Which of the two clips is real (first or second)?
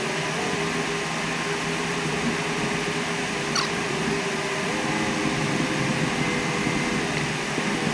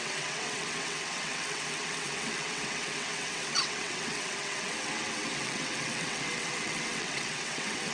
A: first